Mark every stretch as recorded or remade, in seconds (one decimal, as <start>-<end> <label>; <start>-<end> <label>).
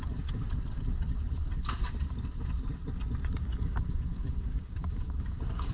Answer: 0.0-3.5 recorded; 3.5-5.7 remade